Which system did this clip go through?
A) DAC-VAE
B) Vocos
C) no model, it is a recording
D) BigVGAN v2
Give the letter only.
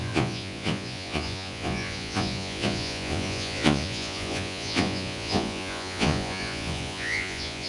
B